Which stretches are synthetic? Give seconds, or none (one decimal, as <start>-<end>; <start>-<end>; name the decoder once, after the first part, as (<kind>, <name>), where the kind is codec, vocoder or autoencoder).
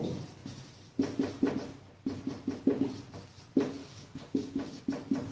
3.8-4.8 (codec, DAC)